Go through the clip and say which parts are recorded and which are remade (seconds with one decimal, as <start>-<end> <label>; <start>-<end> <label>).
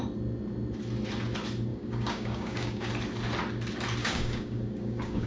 0.0-1.7 recorded; 1.7-2.9 remade; 2.9-4.0 recorded; 4.0-5.3 remade